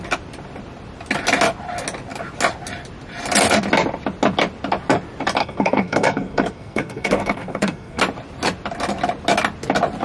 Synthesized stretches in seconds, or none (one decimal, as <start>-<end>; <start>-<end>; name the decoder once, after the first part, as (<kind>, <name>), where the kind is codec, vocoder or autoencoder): 5.4-8.0 (codec, SNAC)